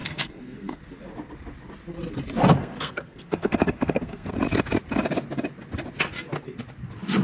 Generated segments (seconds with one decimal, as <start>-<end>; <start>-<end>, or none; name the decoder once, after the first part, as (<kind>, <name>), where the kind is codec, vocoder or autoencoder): 0.0-0.8 (codec, SNAC); 2.6-4.3